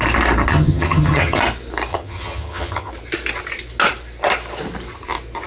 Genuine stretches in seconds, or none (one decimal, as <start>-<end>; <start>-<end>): 0.0-0.5; 1.4-1.9; 2.9-5.5